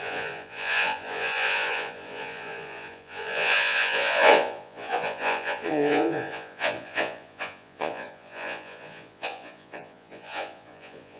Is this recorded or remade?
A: remade